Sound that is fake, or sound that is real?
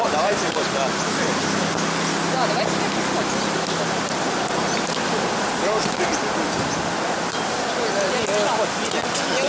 real